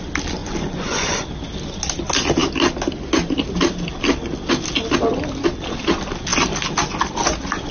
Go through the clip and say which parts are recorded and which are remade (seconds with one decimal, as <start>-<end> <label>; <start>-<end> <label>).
0.0-0.4 recorded; 0.4-1.3 remade; 1.3-7.7 recorded